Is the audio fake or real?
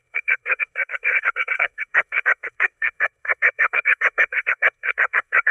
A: fake